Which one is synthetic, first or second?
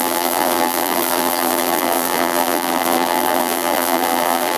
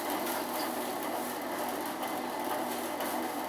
first